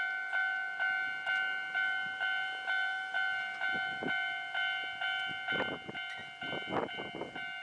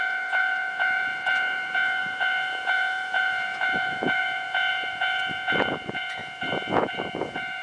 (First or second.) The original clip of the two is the first